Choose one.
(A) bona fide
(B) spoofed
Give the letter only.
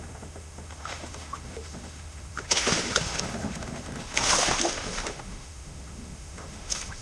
B